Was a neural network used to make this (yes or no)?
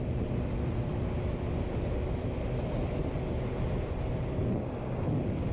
no